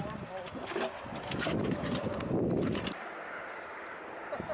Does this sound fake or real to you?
real